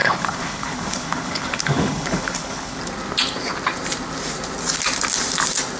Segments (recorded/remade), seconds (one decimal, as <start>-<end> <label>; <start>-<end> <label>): 0.0-2.8 remade; 2.8-5.8 recorded